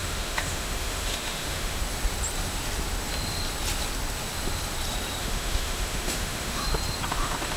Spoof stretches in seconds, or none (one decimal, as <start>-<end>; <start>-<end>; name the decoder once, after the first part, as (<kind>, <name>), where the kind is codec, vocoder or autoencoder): 0.0-1.8 (autoencoder, DAC-VAE); 5.2-6.6; 7.1-7.6